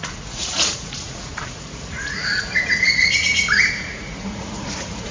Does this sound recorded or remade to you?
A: remade